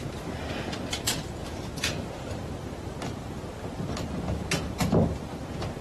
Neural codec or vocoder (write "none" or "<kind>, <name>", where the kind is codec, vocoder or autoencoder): none